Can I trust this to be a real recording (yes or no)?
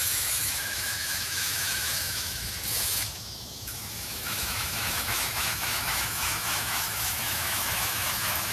no